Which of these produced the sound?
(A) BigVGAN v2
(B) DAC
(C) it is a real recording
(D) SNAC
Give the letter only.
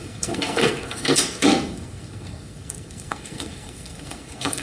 D